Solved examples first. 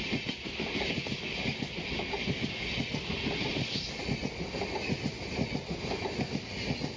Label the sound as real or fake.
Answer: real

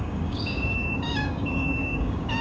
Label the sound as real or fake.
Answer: fake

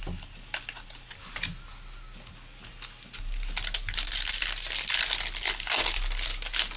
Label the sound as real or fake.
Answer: real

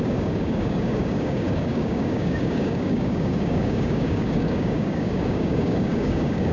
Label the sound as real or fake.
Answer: fake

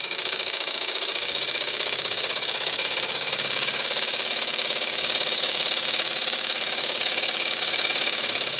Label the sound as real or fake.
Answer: fake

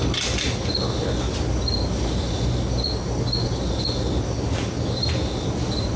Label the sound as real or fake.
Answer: real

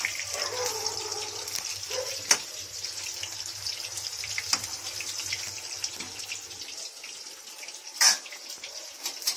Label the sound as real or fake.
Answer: real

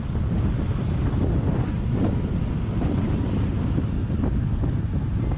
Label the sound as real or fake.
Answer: real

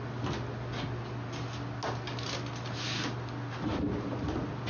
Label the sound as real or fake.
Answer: real